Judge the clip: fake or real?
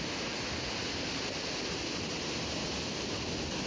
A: real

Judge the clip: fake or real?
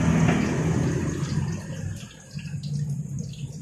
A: real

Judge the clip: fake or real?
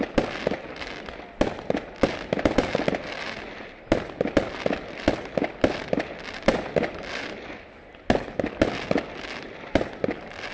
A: real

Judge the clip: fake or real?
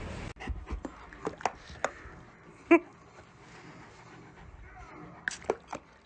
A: real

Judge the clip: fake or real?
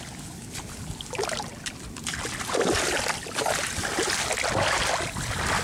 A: real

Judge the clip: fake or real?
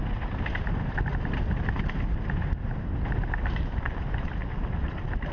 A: real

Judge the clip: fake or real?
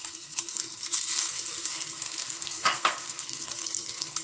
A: fake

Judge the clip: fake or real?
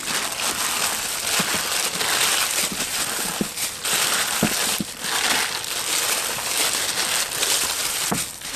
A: real